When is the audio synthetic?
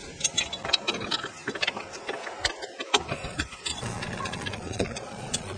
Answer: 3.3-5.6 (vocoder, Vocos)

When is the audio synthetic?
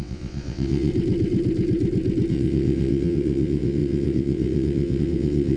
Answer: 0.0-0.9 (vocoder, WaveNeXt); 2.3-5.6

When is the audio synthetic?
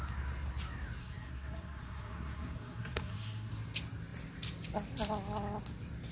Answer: 1.0-3.5 (codec, SNAC)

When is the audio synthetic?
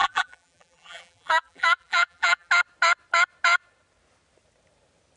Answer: 0.0-2.5 (vocoder, BigVGAN v2)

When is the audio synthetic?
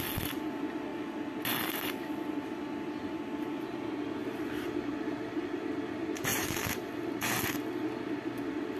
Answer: 4.2-5.6 (vocoder, BigVGAN v2); 6.3-6.9